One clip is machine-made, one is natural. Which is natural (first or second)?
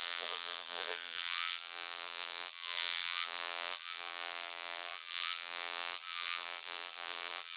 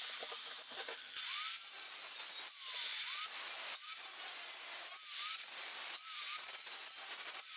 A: second